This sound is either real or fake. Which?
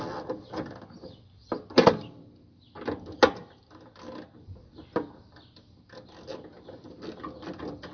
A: real